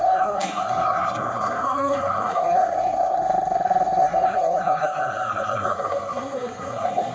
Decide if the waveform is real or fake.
fake